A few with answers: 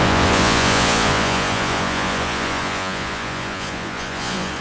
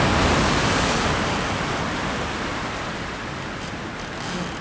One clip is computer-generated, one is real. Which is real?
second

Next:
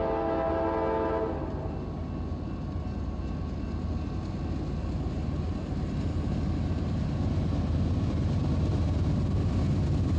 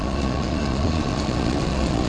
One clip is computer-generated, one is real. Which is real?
first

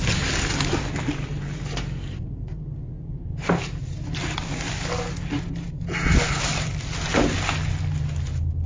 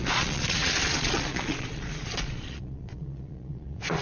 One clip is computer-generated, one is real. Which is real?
first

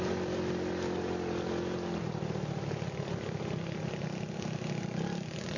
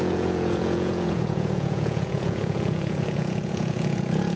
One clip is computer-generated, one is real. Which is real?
first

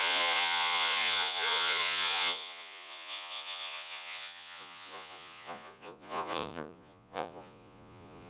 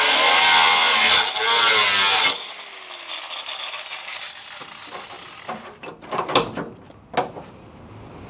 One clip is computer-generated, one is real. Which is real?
second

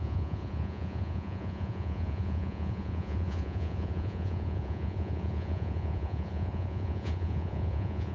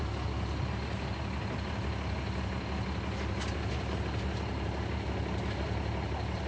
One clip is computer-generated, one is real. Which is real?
second